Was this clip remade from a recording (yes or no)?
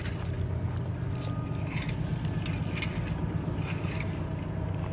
no